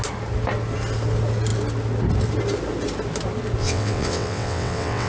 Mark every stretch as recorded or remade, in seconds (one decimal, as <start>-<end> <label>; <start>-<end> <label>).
0.0-3.6 recorded; 3.6-5.1 remade